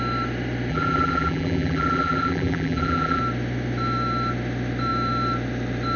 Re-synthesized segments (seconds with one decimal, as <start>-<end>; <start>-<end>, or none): 0.7-3.2